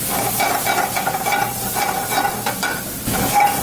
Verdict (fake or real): real